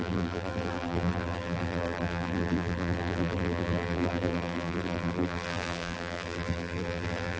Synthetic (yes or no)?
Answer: yes